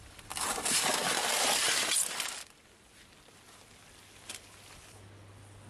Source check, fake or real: real